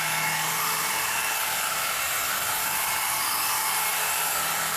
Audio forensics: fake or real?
fake